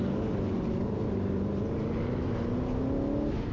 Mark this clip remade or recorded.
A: recorded